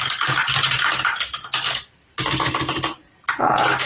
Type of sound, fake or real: real